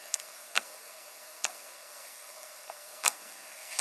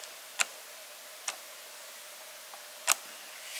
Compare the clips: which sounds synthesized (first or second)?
first